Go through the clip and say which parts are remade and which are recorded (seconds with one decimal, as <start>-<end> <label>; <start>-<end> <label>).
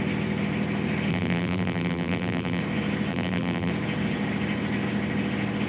0.0-1.1 recorded; 1.1-2.6 remade; 2.6-3.1 recorded; 3.1-3.7 remade; 3.7-5.7 recorded